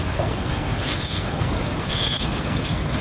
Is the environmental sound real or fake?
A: fake